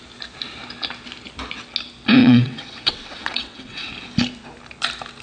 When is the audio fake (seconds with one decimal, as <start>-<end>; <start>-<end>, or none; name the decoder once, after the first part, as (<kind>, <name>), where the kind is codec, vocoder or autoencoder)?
2.2-3.9 (vocoder, WaveNeXt)